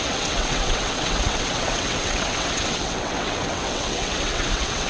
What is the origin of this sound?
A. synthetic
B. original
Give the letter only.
A